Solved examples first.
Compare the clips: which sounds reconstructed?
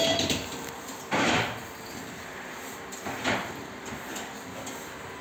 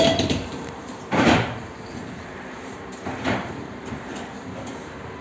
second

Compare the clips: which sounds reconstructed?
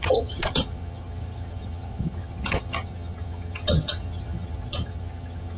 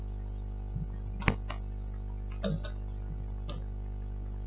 first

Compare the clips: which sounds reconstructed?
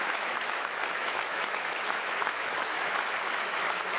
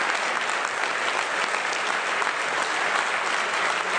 first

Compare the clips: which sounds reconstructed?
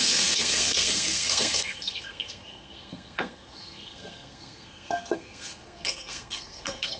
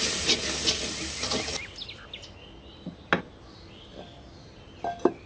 first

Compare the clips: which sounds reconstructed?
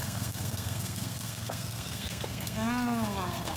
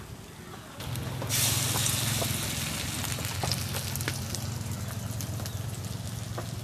first